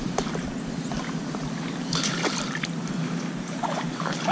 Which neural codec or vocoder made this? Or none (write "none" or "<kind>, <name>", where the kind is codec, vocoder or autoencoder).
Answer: none